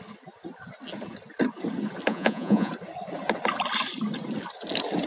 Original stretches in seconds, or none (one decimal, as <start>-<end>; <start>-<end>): 0.0-2.1; 2.7-5.1